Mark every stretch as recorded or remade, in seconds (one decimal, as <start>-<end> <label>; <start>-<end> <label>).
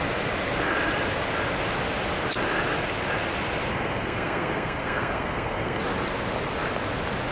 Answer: 0.0-3.7 recorded; 3.7-5.8 remade; 5.8-7.3 recorded